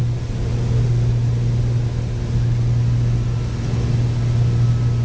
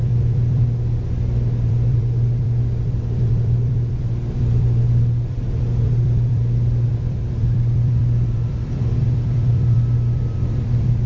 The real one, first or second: first